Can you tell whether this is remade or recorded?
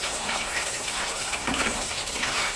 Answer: remade